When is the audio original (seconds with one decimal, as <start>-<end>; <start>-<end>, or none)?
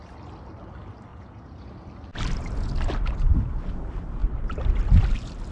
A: 0.0-1.1; 1.7-5.5